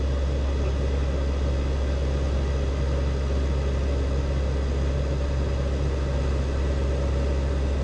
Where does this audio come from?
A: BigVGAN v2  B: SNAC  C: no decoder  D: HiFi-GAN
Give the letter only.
C